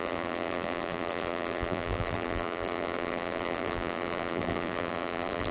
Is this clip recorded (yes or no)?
no